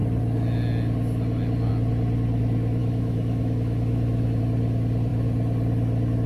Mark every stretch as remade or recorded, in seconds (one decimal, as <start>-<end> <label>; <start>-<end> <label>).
0.0-2.8 recorded; 2.8-4.4 remade; 4.4-6.3 recorded